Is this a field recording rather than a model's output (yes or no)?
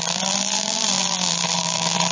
no